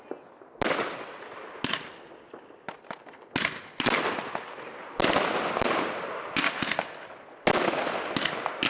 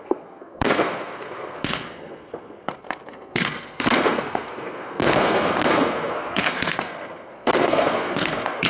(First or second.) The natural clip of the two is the first